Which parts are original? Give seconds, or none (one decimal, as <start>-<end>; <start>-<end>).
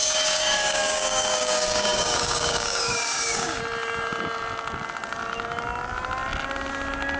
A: 3.6-7.2